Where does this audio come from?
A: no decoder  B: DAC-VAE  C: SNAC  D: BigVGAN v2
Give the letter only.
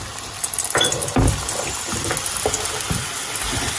A